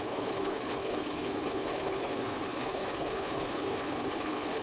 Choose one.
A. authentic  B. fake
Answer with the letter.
B